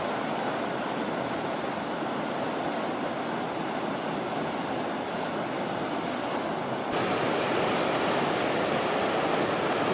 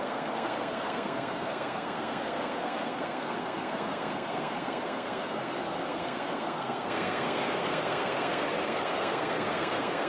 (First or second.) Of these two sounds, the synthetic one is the second